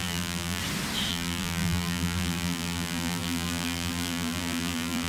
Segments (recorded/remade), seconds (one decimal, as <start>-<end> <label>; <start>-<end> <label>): 0.0-0.6 remade; 0.6-1.1 recorded; 1.1-5.1 remade